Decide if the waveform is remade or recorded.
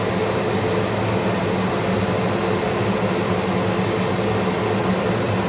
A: recorded